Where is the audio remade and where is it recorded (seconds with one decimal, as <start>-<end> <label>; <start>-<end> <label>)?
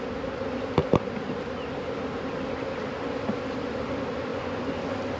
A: 0.0-4.3 recorded; 4.3-4.8 remade; 4.8-5.2 recorded